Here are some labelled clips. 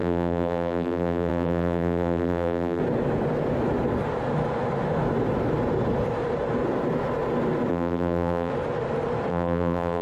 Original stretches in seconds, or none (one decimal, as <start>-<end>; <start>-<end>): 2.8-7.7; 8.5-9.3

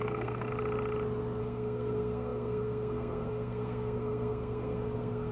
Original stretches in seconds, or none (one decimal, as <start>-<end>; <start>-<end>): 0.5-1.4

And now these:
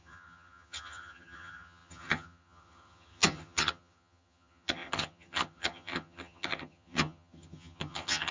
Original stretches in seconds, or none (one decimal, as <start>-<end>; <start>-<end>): none

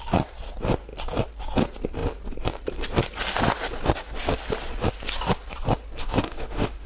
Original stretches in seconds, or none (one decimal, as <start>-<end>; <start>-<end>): 0.0-6.0

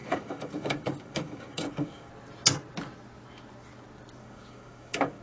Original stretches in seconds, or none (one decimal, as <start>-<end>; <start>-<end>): 2.1-4.2

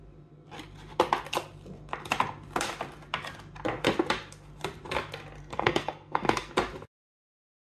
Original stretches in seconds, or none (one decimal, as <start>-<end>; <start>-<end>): 0.0-5.4; 6.5-7.7